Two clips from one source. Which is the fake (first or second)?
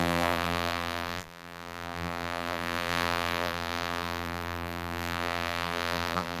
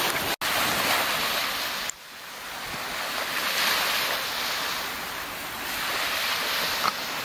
first